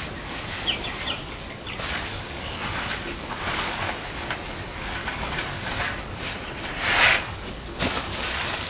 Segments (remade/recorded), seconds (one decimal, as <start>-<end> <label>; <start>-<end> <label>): 0.0-1.2 recorded; 1.2-3.9 remade; 3.9-5.0 recorded; 5.0-5.8 remade; 5.8-7.1 recorded; 7.1-8.7 remade